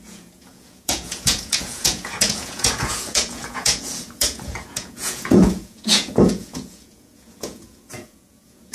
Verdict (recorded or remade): remade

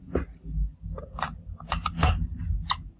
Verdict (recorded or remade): recorded